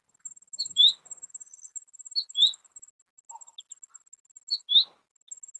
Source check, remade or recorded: recorded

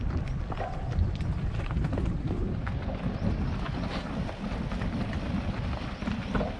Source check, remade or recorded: recorded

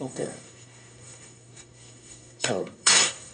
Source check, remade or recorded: remade